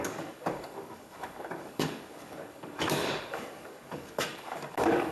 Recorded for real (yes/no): no